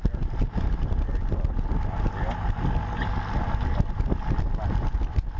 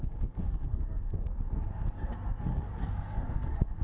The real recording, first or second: first